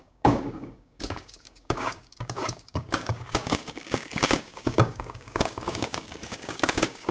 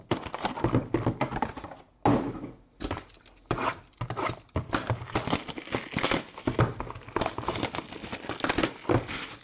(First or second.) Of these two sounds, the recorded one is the second